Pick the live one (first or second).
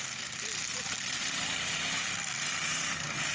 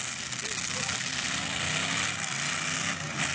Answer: second